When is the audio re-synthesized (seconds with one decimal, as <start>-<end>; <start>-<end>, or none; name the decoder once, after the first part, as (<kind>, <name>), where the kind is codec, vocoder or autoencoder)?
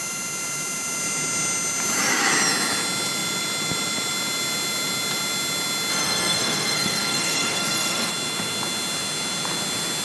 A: 5.9-8.1 (codec, SNAC)